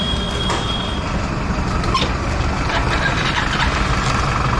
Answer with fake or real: real